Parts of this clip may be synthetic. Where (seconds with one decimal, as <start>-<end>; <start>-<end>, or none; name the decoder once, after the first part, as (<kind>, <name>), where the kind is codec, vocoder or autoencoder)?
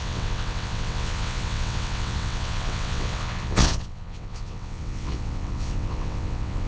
0.0-6.7 (vocoder, WaveNeXt)